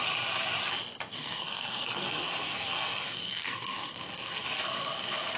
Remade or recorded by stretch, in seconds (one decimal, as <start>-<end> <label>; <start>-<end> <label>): 0.0-1.2 recorded; 1.2-4.4 remade; 4.4-5.4 recorded